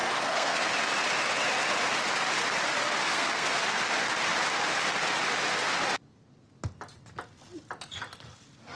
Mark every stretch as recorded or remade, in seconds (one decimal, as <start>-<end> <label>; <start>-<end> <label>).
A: 0.0-0.7 remade; 0.7-3.0 recorded; 3.0-3.8 remade; 3.8-8.8 recorded